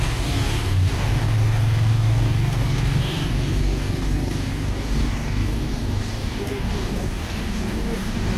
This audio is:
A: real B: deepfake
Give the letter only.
B